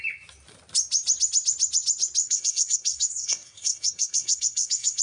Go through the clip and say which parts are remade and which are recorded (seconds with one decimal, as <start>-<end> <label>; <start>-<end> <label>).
0.0-2.2 recorded; 2.2-5.0 remade